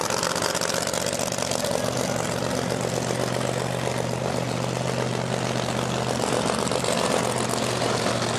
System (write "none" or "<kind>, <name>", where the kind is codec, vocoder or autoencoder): none